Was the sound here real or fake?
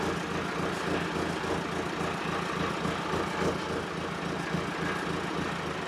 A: real